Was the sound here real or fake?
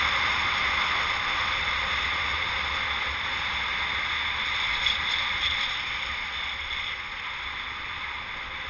real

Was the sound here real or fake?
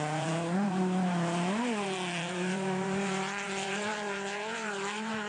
fake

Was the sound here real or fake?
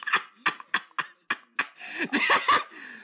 real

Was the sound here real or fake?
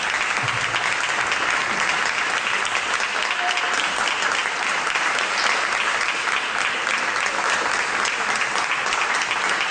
real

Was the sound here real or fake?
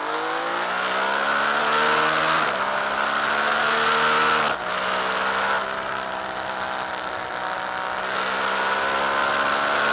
real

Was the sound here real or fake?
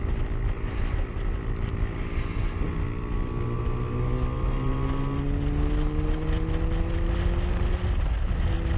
real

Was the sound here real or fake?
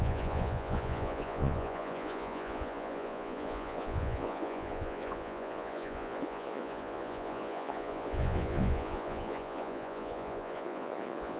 fake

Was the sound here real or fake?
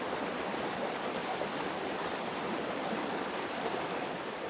fake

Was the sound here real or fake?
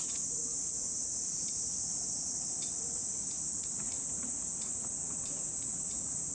fake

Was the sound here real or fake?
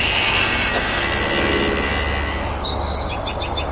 real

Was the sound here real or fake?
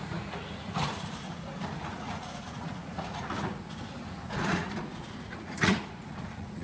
fake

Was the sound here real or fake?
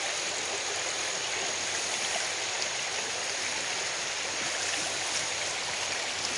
real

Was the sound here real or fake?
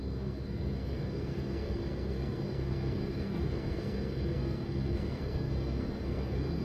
fake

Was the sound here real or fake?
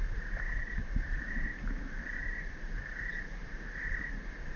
real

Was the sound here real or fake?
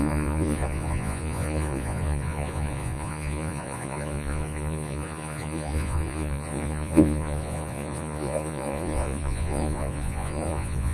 fake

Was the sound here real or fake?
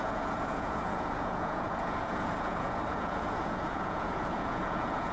fake